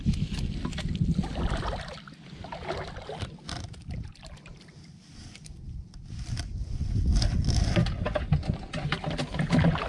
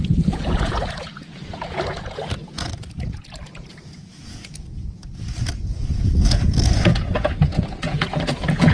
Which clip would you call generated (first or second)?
second